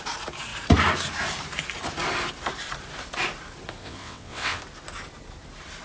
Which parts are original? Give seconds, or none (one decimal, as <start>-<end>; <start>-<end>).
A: 0.0-3.8; 4.6-5.8